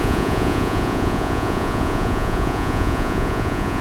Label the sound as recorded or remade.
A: remade